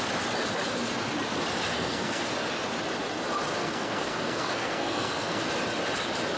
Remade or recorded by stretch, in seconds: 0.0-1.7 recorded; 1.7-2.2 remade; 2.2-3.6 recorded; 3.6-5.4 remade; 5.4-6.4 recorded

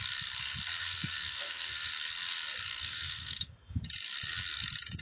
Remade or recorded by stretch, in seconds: 0.0-0.8 recorded; 0.8-1.9 remade; 1.9-2.7 recorded; 2.7-3.5 remade; 3.5-5.0 recorded

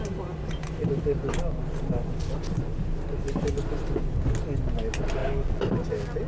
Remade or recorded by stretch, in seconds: 0.0-6.3 recorded

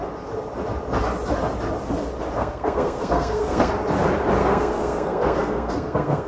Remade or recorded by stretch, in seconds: 0.0-2.4 recorded; 2.4-3.7 remade; 3.7-4.4 recorded; 4.4-6.3 remade

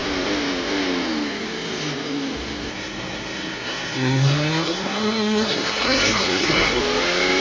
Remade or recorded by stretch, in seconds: 0.0-2.7 recorded; 2.7-6.8 remade; 6.8-7.4 recorded

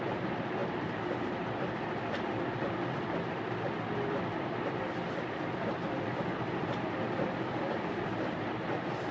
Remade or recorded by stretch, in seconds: 0.0-9.1 recorded

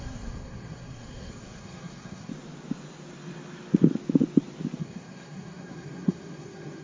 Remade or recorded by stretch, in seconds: 0.0-2.3 remade; 2.3-4.8 recorded; 4.8-6.8 remade

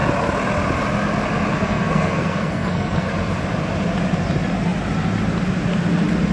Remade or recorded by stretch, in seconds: 0.0-1.5 recorded; 1.5-3.1 remade; 3.1-6.3 recorded